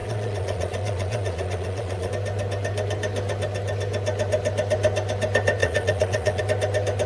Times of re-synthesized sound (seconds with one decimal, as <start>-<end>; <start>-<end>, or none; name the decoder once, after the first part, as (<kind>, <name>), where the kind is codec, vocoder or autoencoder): 0.0-2.1 (vocoder, Vocos); 5.6-6.4